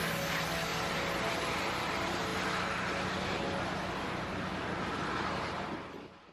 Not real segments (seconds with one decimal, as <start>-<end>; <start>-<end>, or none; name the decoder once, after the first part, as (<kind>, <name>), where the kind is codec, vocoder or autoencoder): none